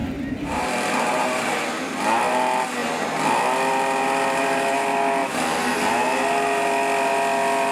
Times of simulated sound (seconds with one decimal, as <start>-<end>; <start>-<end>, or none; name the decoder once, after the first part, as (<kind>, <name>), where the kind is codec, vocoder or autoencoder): 0.0-0.6 (vocoder, BigVGAN v2); 5.2-5.8